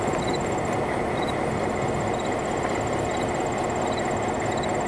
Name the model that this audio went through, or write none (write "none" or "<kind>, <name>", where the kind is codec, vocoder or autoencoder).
none